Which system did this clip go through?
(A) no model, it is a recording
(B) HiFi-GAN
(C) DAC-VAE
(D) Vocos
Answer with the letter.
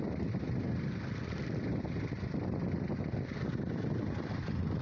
A